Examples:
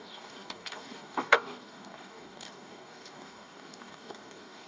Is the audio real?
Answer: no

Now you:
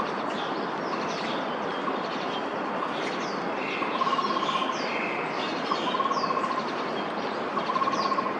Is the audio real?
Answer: yes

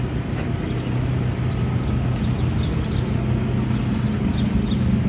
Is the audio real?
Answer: yes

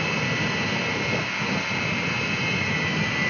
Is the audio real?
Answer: yes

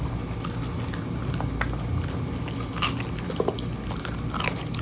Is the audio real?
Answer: yes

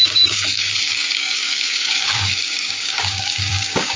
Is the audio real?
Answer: no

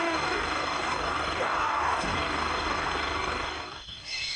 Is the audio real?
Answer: no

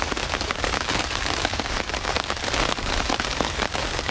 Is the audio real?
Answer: no